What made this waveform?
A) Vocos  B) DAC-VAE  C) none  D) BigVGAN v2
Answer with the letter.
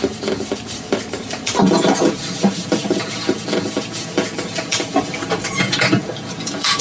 D